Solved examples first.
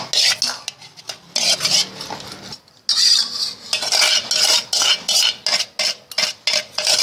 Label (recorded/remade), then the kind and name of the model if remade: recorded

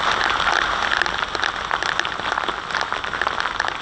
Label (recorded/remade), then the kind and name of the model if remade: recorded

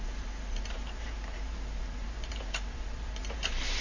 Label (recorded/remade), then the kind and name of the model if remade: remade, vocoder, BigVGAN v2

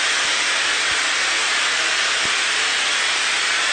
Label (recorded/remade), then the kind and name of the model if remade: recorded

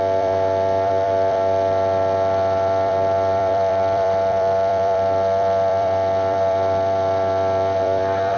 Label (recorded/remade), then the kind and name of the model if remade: remade, vocoder, BigVGAN v2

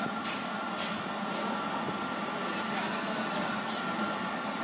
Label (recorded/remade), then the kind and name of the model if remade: recorded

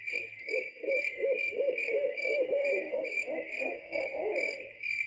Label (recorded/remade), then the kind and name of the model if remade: remade, codec, SNAC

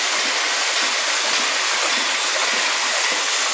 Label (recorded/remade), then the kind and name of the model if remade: recorded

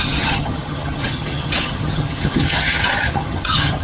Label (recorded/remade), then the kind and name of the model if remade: remade, vocoder, HiFi-GAN